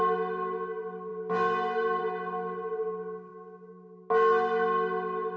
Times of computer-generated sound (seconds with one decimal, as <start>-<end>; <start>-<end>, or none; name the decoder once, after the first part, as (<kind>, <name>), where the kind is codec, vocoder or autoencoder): none